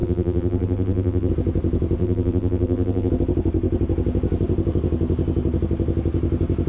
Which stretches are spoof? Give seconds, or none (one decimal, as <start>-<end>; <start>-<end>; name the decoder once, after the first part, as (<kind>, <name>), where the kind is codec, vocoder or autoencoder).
0.0-1.3 (vocoder, BigVGAN v2); 2.0-3.1